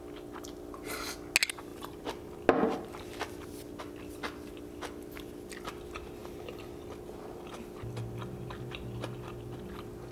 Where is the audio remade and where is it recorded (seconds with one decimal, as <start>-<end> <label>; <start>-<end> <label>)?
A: 0.0-10.1 recorded